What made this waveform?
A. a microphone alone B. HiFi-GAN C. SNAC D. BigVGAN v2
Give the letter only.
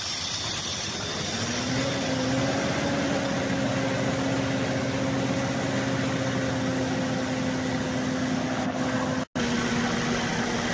A